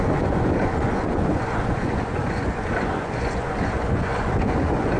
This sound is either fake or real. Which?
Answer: fake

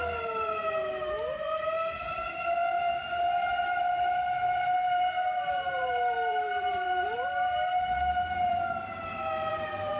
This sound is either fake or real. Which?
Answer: fake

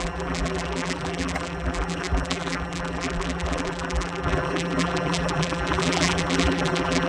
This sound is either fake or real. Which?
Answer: fake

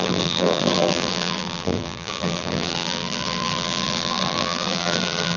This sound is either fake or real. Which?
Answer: fake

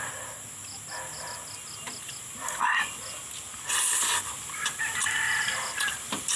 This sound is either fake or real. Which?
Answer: real